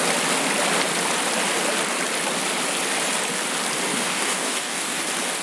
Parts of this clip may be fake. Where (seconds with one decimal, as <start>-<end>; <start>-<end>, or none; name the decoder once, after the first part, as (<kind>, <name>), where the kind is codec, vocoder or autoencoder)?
3.9-5.0 (codec, DAC)